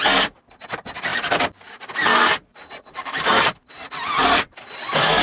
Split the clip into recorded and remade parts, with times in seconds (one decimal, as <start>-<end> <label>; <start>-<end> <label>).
0.0-2.5 recorded; 2.5-3.8 remade; 3.8-4.2 recorded; 4.2-4.8 remade; 4.8-5.2 recorded